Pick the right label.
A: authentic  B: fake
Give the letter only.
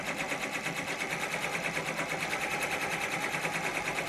A